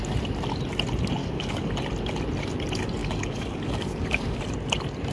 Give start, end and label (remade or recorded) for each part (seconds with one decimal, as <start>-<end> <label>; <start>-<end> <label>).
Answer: 0.0-1.2 recorded; 1.2-1.7 remade; 1.7-3.0 recorded; 3.0-4.4 remade; 4.4-5.1 recorded

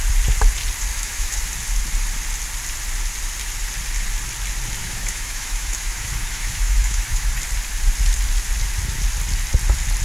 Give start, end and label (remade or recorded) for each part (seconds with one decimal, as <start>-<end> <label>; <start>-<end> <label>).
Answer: 0.0-0.9 recorded; 0.9-1.4 remade; 1.4-4.8 recorded; 4.8-7.3 remade; 7.3-10.0 recorded

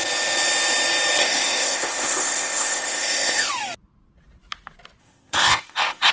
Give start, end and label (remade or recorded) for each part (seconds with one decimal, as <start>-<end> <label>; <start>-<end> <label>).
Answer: 0.0-1.2 recorded; 1.2-3.5 remade; 3.5-5.0 recorded; 5.0-6.1 remade

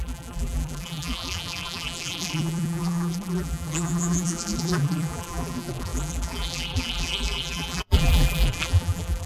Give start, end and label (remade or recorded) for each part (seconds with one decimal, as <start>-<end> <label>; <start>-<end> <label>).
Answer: 0.0-9.3 remade

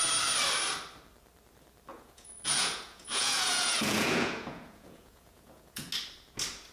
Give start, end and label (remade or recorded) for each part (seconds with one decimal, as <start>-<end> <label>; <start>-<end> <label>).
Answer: 0.0-1.9 recorded; 1.9-5.9 remade; 5.9-6.7 recorded

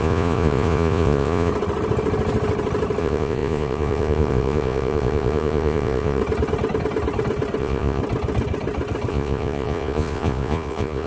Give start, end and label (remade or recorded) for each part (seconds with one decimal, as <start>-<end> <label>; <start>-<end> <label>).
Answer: 0.0-1.5 remade; 1.5-3.0 recorded; 3.0-6.2 remade; 6.2-7.6 recorded; 7.6-8.0 remade; 8.0-9.1 recorded; 9.1-11.1 remade

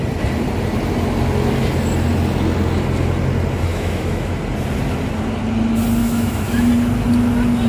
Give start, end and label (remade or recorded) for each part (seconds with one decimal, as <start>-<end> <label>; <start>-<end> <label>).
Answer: 0.0-3.7 recorded; 3.7-4.3 remade; 4.3-6.0 recorded; 6.0-6.7 remade; 6.7-7.7 recorded

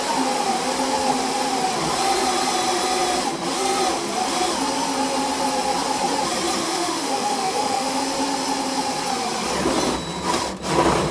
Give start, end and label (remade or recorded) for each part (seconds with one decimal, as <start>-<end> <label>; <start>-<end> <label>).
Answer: 0.0-6.6 recorded; 6.6-8.0 remade; 8.0-11.1 recorded